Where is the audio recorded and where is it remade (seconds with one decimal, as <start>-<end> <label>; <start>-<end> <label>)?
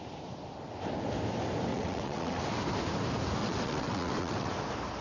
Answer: 0.0-1.7 recorded; 1.7-2.4 remade; 2.4-3.4 recorded; 3.4-4.5 remade; 4.5-5.0 recorded